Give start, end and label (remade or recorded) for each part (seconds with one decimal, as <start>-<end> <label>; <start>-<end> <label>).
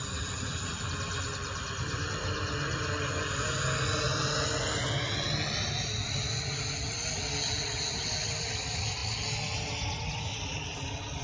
0.0-11.2 recorded